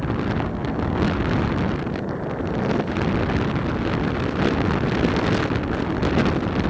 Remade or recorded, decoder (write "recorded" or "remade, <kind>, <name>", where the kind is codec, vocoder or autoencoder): recorded